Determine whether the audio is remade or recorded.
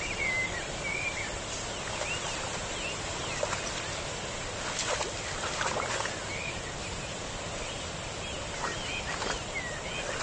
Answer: recorded